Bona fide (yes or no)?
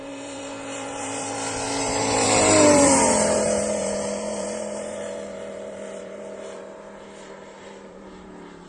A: no